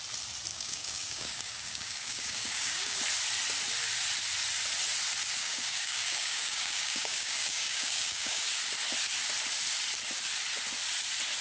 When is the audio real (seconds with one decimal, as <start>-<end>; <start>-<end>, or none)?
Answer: 0.0-0.5; 3.0-5.4; 8.5-11.4